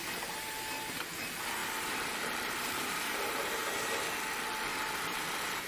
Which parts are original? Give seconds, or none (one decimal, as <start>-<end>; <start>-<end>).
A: 0.0-1.6; 3.7-4.7